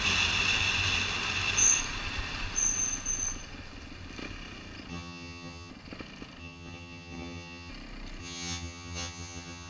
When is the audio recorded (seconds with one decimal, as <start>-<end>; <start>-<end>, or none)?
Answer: 0.0-4.9; 5.7-6.4; 7.7-8.2